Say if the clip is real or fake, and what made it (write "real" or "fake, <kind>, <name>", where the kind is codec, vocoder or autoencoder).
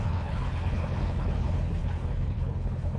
fake, codec, HILCodec